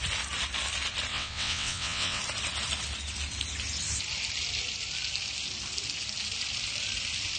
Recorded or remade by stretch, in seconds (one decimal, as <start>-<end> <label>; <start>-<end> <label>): 0.0-1.1 recorded; 1.1-2.2 remade; 2.2-7.4 recorded

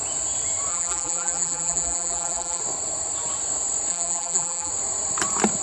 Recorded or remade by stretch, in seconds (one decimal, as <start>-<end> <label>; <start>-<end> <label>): 0.0-0.7 recorded; 0.7-2.6 remade; 2.6-3.9 recorded; 3.9-4.7 remade; 4.7-5.6 recorded

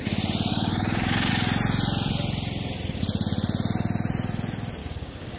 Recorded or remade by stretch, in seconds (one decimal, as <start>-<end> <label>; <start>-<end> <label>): 0.0-0.5 recorded; 0.5-1.3 remade; 1.3-4.8 recorded; 4.8-5.4 remade

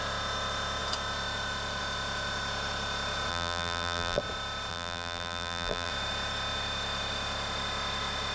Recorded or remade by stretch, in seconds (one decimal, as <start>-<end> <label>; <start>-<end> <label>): 0.0-3.3 recorded; 3.3-4.2 remade; 4.2-4.7 recorded; 4.7-5.9 remade; 5.9-8.3 recorded

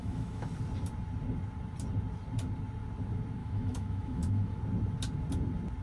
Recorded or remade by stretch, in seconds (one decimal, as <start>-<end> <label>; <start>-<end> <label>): 0.0-0.5 remade; 0.5-3.4 recorded; 3.4-4.6 remade; 4.6-5.8 recorded

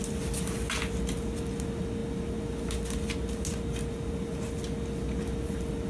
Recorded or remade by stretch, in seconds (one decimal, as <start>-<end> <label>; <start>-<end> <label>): 0.0-5.9 recorded

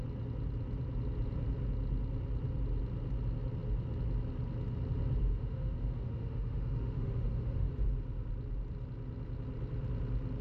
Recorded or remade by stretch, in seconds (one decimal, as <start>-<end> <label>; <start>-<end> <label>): 0.0-5.2 recorded; 5.2-7.7 remade; 7.7-10.4 recorded